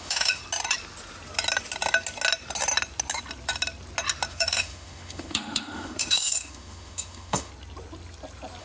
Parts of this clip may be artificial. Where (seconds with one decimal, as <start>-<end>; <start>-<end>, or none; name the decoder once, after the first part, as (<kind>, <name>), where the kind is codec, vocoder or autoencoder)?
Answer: 0.0-0.4 (autoencoder, DAC-VAE); 4.3-7.5